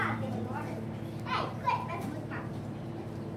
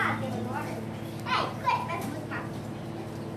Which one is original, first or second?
second